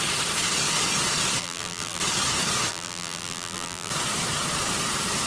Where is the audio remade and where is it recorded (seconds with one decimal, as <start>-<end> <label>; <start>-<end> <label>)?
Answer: 0.0-1.4 recorded; 1.4-2.0 remade; 2.0-2.7 recorded; 2.7-3.9 remade; 3.9-5.3 recorded